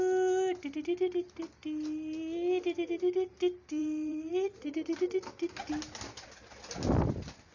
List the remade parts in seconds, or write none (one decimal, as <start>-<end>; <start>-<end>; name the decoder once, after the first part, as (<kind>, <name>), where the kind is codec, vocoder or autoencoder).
3.8-4.3 (vocoder, BigVGAN v2)